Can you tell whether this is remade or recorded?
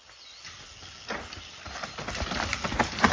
recorded